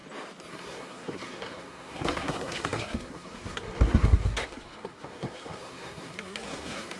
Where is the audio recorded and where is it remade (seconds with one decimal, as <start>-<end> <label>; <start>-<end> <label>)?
0.0-0.5 recorded; 0.5-7.0 remade